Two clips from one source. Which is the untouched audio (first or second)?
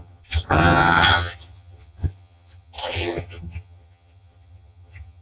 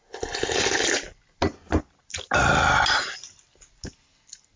second